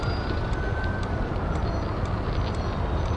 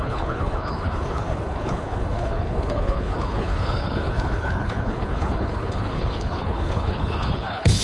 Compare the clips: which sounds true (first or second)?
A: first